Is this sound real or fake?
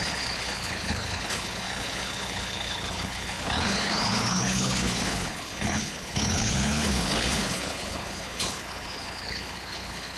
fake